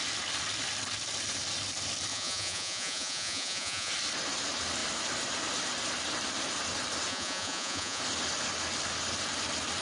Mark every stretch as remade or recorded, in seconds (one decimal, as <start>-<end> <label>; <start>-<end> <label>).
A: 0.0-2.1 recorded; 2.1-3.9 remade; 3.9-7.1 recorded; 7.1-8.0 remade; 8.0-9.8 recorded